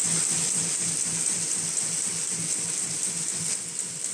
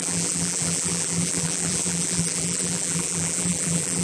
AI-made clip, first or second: second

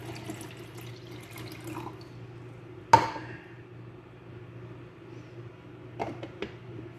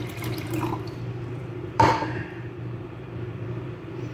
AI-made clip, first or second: second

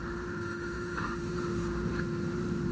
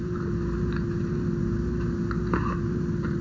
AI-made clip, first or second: first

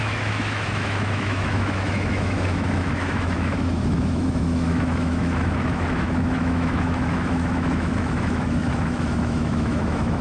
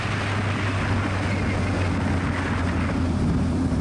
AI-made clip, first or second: first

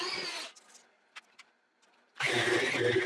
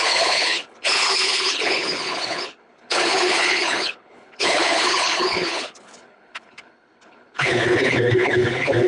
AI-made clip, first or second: second